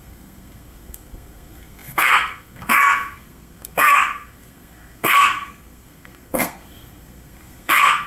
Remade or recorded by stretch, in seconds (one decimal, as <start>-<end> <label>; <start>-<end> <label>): 0.0-8.1 remade

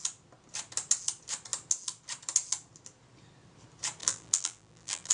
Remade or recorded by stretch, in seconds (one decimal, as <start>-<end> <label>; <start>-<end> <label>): 0.0-4.0 recorded; 4.0-5.1 remade

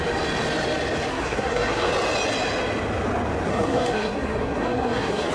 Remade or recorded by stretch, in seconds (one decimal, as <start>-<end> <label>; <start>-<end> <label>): 0.0-1.1 recorded; 1.1-1.9 remade; 1.9-3.5 recorded; 3.5-5.3 remade

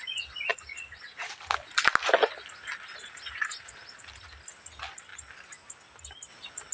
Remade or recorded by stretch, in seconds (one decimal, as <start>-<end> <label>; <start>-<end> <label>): 0.0-0.5 recorded; 0.5-1.3 remade; 1.3-2.9 recorded; 2.9-4.0 remade; 4.0-6.7 recorded